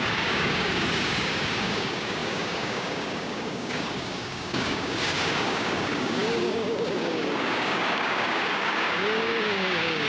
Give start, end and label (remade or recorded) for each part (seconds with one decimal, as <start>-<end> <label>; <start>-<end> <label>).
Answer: 0.0-10.1 remade